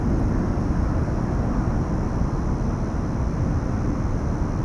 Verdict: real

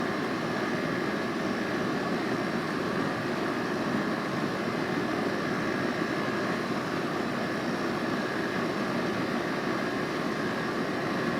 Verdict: real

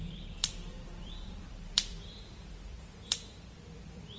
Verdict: fake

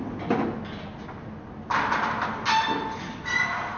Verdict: real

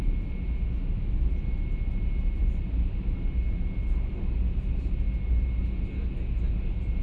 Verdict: real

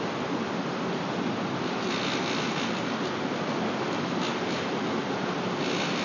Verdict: real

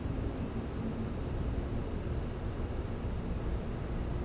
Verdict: fake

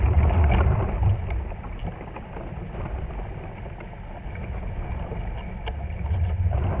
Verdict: real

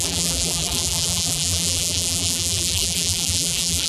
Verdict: fake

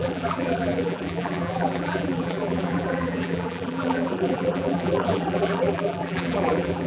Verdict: fake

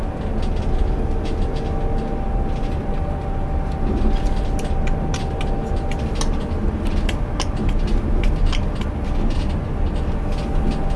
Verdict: real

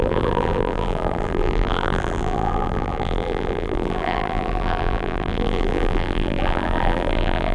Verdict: fake